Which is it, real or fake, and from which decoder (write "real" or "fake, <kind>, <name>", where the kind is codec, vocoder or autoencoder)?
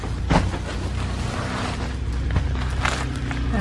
real